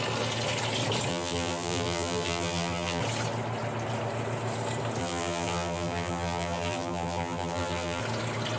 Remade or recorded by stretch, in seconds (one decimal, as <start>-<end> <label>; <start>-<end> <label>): 0.0-1.1 recorded; 1.1-3.0 remade; 3.0-5.0 recorded; 5.0-8.0 remade; 8.0-8.6 recorded